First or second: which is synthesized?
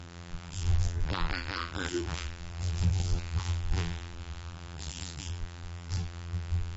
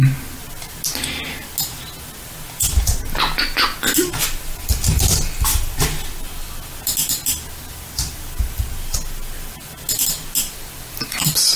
first